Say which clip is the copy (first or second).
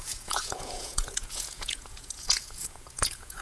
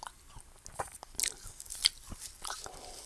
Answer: first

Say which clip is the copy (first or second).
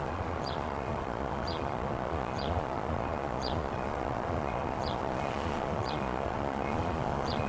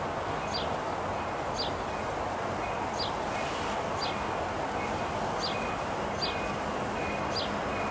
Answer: first